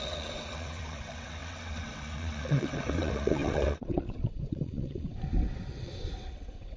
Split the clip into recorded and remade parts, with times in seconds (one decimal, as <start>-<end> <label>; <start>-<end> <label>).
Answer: 0.0-6.8 remade

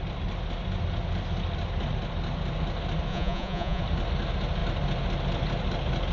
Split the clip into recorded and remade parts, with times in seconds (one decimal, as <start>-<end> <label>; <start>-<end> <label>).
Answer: 0.0-3.1 recorded; 3.1-3.8 remade; 3.8-6.1 recorded

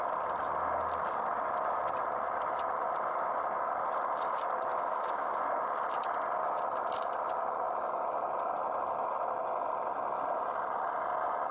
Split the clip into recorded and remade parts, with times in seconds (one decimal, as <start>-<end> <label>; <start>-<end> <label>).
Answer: 0.0-4.9 recorded; 4.9-5.4 remade; 5.4-11.5 recorded

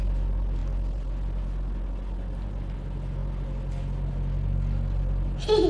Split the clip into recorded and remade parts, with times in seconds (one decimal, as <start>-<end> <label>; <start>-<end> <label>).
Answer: 0.0-5.7 recorded

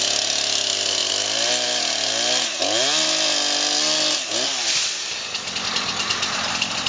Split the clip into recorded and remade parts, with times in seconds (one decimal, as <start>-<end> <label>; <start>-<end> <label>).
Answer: 0.0-6.9 recorded